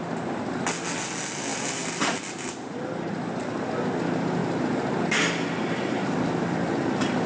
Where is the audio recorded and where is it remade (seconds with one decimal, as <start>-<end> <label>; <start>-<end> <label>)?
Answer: 0.0-7.3 recorded